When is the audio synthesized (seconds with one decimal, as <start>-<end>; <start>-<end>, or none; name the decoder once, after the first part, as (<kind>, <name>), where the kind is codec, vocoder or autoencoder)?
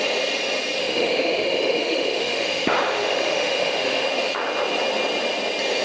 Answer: 0.8-4.1 (autoencoder, DAC-VAE)